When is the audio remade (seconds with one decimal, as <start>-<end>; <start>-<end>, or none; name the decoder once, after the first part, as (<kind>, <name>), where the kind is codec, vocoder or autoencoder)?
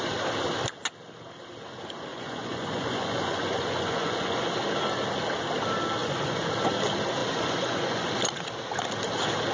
2.1-4.5 (vocoder, Vocos); 6.0-6.5; 7.2-8.1